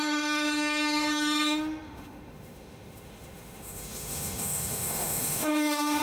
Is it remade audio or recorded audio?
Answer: remade